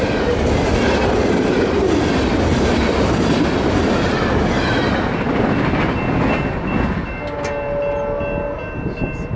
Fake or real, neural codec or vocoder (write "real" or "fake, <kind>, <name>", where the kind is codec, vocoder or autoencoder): real